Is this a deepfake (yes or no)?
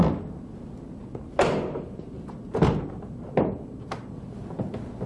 no